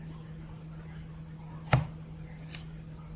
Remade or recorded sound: recorded